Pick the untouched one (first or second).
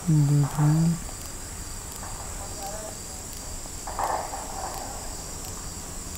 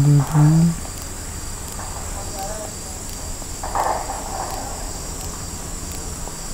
second